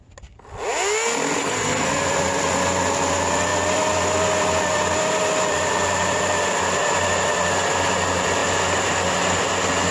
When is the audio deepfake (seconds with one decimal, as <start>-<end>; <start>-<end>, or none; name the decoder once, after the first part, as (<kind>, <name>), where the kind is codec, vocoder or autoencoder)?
1.4-1.9 (codec, SNAC)